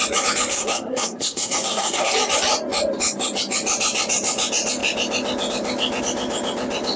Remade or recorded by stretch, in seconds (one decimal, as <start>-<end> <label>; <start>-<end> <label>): 0.0-0.5 recorded; 0.5-2.1 remade; 2.1-7.0 recorded